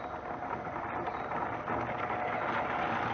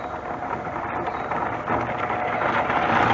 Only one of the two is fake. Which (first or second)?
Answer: second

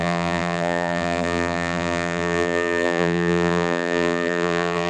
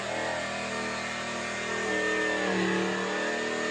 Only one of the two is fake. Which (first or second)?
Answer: first